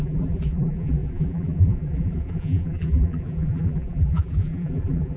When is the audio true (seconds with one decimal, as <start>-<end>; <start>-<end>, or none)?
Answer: none